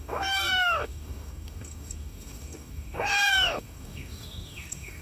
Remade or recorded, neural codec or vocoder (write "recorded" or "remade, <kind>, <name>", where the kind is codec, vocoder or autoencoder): remade, codec, DAC